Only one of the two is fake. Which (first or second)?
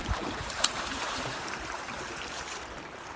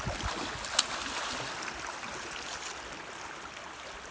first